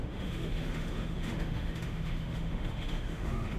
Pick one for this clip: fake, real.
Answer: fake